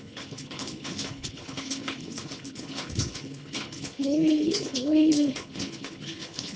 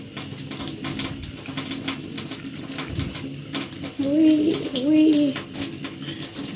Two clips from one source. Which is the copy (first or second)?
first